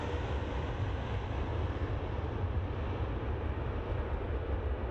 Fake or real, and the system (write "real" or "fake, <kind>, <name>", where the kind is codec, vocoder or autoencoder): real